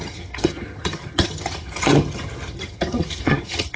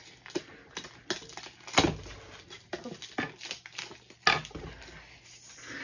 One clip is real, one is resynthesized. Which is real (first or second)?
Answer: second